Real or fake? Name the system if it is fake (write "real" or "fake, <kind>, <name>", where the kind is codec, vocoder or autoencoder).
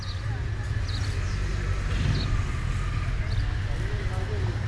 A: real